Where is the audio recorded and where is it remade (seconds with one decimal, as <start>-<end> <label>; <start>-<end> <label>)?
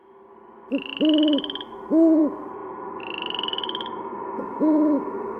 0.0-5.4 recorded